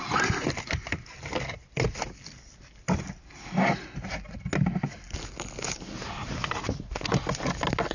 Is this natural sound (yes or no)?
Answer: yes